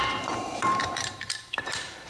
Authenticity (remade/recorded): remade